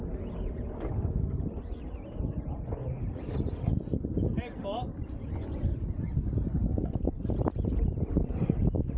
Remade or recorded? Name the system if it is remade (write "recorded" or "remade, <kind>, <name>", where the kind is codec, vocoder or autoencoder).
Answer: recorded